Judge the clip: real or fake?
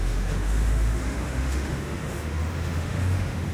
fake